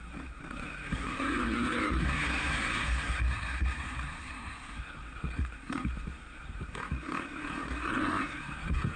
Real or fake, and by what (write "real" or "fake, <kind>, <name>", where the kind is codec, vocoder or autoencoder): fake, codec, SNAC